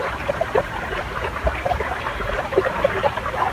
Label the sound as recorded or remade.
remade